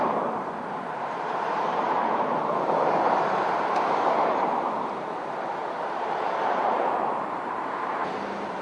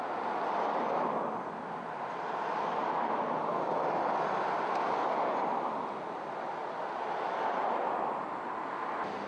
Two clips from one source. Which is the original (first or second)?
second